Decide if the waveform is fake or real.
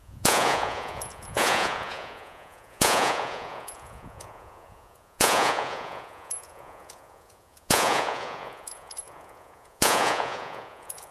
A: fake